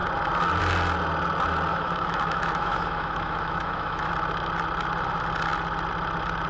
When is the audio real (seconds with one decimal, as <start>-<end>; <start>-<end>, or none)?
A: 0.0-1.7; 4.1-6.5